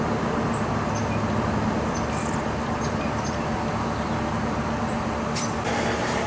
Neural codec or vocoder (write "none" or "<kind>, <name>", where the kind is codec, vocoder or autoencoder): none